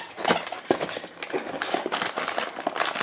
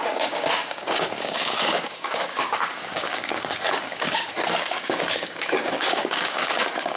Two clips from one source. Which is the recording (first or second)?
first